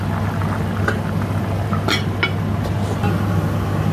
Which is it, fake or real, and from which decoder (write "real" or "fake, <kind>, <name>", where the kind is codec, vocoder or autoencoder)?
real